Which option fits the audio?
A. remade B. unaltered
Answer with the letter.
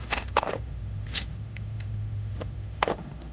A